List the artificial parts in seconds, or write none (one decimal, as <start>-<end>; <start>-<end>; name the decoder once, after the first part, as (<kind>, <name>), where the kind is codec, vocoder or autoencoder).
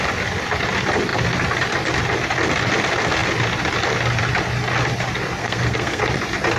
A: 5.4-6.0 (codec, SNAC)